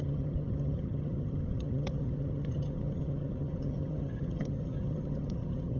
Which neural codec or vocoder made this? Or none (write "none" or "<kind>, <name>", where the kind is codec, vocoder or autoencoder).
vocoder, HiFi-GAN